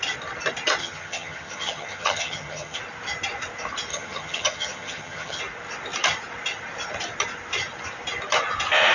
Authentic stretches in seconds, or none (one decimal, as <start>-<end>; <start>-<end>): 0.0-0.8; 2.8-3.9; 5.4-8.9